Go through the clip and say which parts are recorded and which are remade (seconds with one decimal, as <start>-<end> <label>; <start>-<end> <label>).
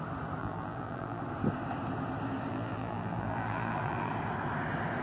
0.0-0.4 recorded; 0.4-1.2 remade; 1.2-2.5 recorded; 2.5-4.1 remade; 4.1-5.0 recorded